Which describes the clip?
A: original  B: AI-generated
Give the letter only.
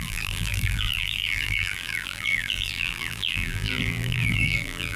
B